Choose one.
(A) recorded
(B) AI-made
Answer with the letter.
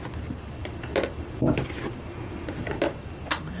A